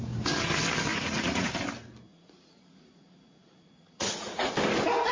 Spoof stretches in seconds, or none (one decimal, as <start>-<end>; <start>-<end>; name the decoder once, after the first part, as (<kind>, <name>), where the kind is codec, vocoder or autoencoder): 0.9-1.6 (vocoder, Vocos); 2.1-4.5